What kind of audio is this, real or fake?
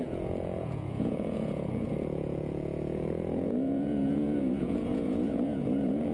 fake